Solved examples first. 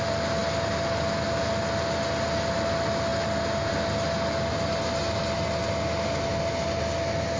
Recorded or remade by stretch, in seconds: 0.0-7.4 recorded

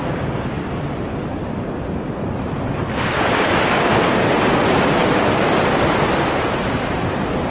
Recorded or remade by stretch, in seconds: 0.0-7.5 recorded

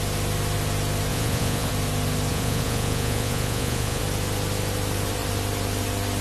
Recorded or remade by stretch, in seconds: 0.0-1.1 recorded; 1.1-1.7 remade; 1.7-2.3 recorded; 2.3-4.0 remade; 4.0-6.2 recorded

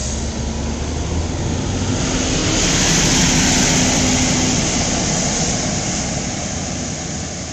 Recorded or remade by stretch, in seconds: 0.0-7.5 recorded

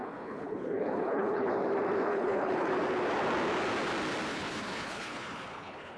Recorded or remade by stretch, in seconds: 0.0-1.5 remade; 1.5-2.1 recorded; 2.1-2.7 remade; 2.7-4.3 recorded; 4.3-6.0 remade

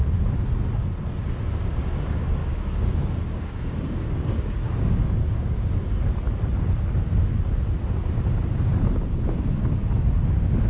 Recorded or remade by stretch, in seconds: 0.0-2.4 recorded; 2.4-6.0 remade; 6.0-10.7 recorded